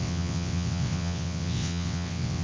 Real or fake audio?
fake